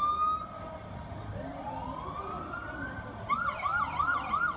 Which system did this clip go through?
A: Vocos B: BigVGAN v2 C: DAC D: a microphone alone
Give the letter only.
D